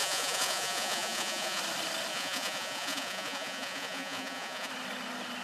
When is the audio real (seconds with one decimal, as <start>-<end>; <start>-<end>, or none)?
1.6-2.1; 4.7-5.4